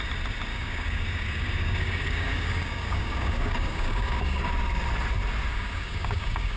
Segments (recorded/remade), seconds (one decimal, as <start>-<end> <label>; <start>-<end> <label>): 0.0-0.5 recorded; 0.5-4.5 remade; 4.5-5.5 recorded; 5.5-6.6 remade